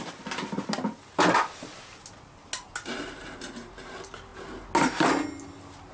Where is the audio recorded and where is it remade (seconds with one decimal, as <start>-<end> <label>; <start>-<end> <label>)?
0.0-5.9 recorded